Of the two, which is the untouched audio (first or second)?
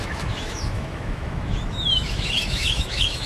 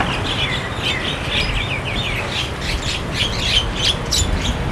second